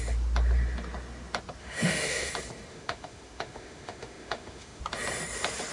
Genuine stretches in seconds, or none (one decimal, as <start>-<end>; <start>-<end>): 0.0-1.6; 2.3-2.7; 4.8-5.7